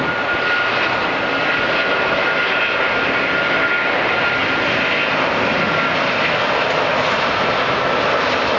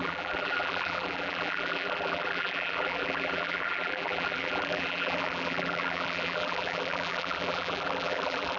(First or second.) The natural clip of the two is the first